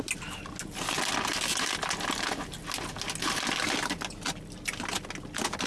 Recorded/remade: recorded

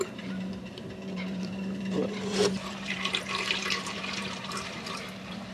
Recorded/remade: remade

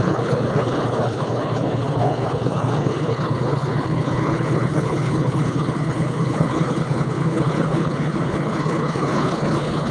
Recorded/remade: remade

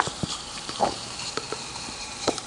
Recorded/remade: remade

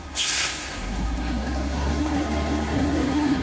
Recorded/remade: remade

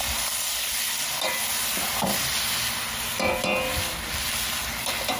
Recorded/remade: recorded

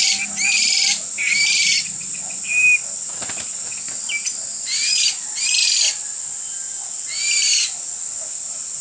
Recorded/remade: recorded